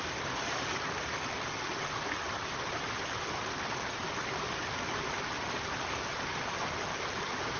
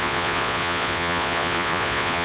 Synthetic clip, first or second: second